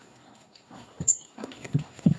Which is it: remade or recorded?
remade